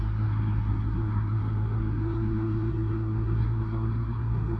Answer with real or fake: fake